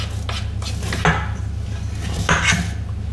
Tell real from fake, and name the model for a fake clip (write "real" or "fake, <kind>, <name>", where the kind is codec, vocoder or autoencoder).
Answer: real